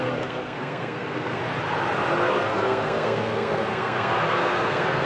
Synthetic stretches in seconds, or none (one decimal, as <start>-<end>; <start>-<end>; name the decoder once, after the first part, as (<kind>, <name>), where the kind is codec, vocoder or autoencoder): 0.0-1.4 (codec, SNAC); 2.3-5.1